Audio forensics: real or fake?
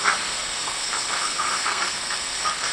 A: fake